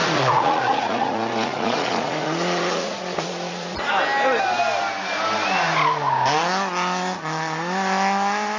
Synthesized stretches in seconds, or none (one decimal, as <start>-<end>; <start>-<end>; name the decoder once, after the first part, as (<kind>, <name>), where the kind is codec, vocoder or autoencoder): 0.0-3.9 (vocoder, Vocos)